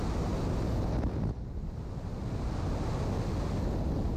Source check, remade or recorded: recorded